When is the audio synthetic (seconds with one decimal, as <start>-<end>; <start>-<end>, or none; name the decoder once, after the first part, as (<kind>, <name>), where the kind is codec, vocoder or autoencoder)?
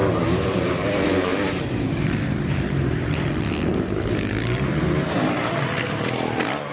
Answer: 0.0-3.3 (vocoder, BigVGAN v2); 3.7-5.4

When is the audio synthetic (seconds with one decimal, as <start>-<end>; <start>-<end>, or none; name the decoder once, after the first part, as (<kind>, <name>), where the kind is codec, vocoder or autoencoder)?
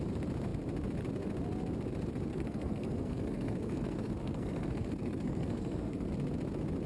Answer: 2.3-6.1 (codec, SNAC)